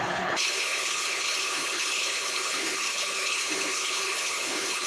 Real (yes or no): no